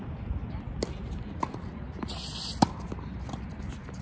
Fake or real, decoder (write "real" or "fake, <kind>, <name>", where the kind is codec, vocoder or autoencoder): real